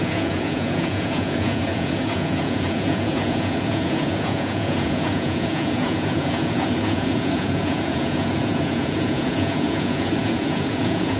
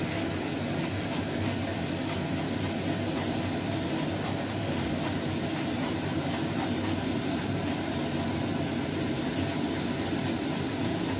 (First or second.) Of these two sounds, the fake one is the first